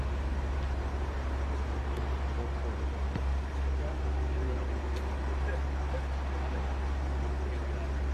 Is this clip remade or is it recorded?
recorded